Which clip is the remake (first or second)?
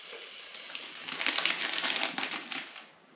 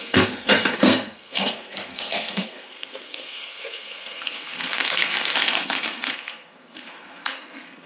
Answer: second